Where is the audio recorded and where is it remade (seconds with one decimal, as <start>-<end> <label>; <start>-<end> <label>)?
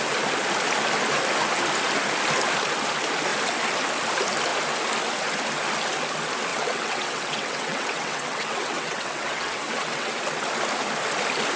0.0-6.5 recorded; 6.5-10.2 remade; 10.2-11.6 recorded